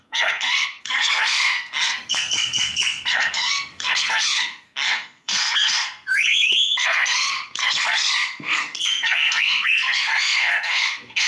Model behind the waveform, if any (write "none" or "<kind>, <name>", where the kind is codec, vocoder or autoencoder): codec, SNAC